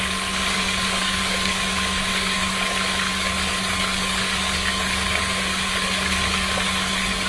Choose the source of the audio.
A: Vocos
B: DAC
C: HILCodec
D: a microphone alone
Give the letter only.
B